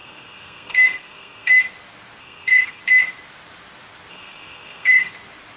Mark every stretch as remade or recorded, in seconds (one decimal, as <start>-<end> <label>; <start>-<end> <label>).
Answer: 0.0-1.6 remade; 1.6-2.2 recorded; 2.2-2.8 remade; 2.8-4.1 recorded; 4.1-5.1 remade; 5.1-5.6 recorded